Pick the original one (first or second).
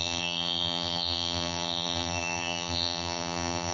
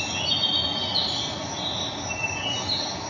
second